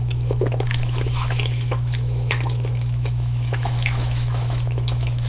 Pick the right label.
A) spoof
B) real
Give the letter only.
A